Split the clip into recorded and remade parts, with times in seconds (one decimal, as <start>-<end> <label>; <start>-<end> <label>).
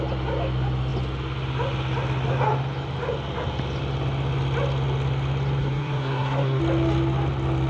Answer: 0.0-5.6 recorded; 5.6-6.6 remade; 6.6-7.7 recorded